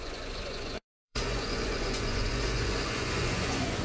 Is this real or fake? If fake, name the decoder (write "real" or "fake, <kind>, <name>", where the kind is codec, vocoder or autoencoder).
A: fake, vocoder, Vocos